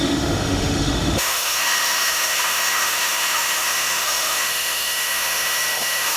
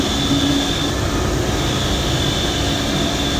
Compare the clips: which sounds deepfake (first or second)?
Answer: first